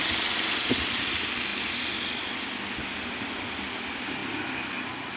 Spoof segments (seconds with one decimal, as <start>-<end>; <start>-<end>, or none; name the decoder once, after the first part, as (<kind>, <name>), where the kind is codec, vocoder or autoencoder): none